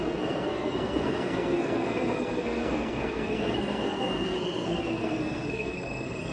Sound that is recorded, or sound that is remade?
remade